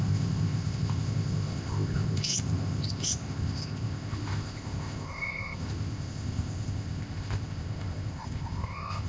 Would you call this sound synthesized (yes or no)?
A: yes